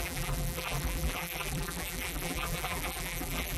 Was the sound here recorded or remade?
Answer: remade